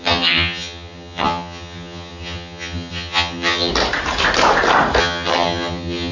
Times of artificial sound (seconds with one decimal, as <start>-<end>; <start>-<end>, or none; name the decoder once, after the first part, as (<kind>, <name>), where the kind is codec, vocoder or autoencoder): 0.0-3.7 (vocoder, HiFi-GAN); 5.0-6.1